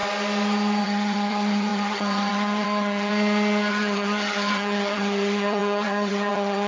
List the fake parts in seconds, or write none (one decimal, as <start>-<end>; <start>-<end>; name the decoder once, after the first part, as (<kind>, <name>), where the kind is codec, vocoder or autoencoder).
0.8-3.1 (vocoder, HiFi-GAN); 3.7-6.7